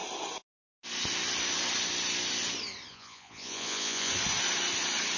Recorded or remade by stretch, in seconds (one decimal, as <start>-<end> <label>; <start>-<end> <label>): 0.0-2.9 recorded; 2.9-4.1 remade; 4.1-5.2 recorded